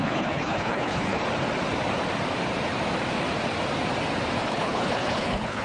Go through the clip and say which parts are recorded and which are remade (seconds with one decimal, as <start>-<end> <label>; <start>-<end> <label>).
0.0-1.2 remade; 1.2-4.5 recorded; 4.5-5.6 remade